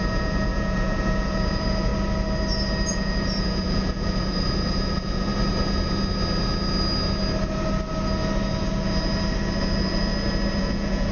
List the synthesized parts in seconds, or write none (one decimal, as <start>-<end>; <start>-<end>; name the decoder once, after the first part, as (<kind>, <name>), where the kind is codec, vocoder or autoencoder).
0.0-1.9 (vocoder, Vocos); 2.9-5.3; 9.6-10.1; 10.6-11.1